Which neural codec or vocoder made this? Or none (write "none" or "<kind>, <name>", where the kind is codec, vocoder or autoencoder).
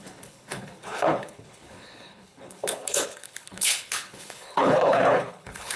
codec, HILCodec